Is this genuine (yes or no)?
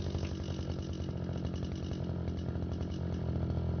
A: yes